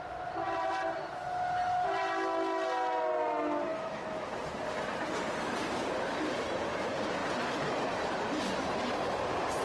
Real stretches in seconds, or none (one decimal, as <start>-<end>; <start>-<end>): 0.0-3.7; 4.4-9.6